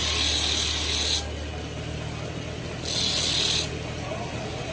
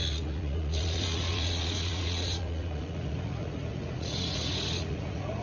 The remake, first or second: second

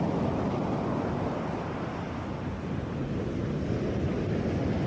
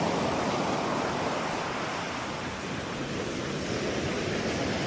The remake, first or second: second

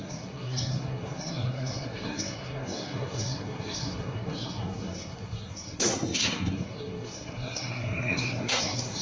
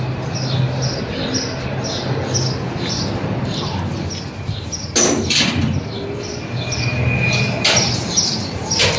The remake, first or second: first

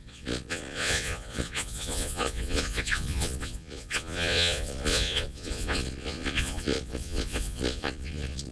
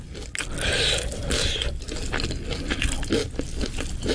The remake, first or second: first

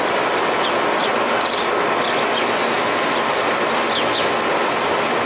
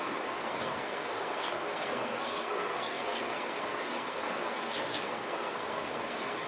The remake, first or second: second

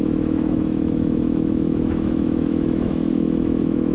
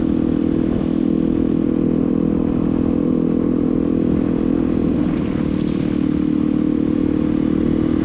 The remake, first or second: first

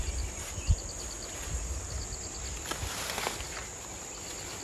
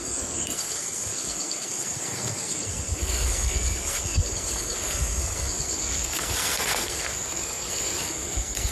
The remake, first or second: second